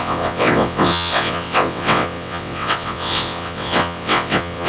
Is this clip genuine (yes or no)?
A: no